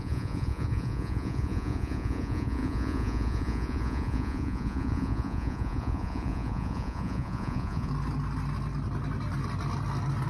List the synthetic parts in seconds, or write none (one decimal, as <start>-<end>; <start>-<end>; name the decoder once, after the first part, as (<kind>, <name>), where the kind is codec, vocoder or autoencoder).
0.0-7.9 (vocoder, Vocos)